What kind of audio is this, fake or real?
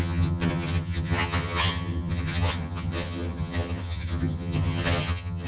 fake